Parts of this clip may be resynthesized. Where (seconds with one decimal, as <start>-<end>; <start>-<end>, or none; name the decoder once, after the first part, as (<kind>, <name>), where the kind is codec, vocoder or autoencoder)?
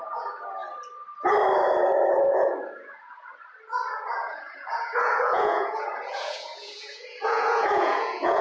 0.0-0.6 (vocoder, Vocos); 2.2-3.3; 4.3-8.4